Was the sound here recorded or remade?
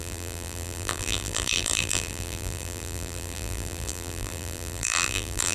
remade